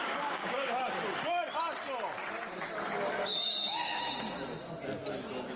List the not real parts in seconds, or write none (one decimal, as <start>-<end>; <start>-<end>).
0.0-1.5; 3.2-4.0